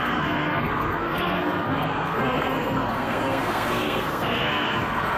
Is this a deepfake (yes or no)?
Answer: yes